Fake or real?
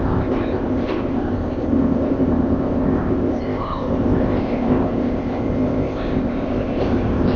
fake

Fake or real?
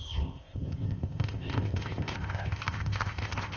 fake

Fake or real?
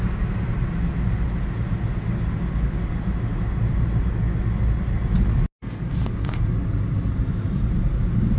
real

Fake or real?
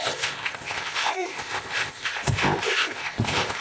fake